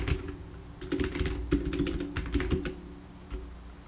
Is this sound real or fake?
real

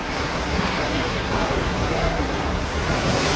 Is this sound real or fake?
fake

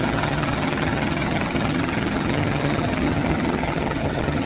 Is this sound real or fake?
fake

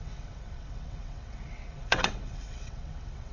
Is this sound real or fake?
fake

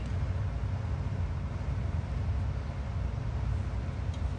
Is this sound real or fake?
real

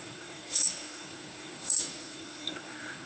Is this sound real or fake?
fake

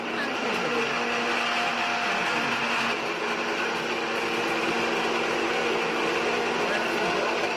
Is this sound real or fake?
real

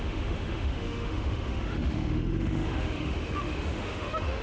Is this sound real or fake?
fake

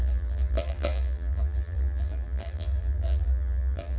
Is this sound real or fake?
fake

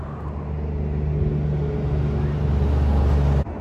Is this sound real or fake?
real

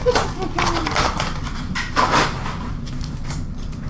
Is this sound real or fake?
fake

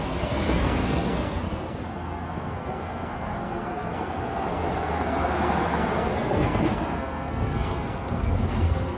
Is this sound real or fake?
fake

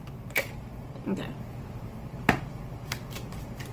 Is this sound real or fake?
fake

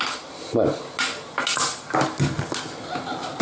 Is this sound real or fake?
real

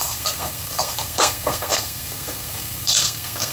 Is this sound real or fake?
fake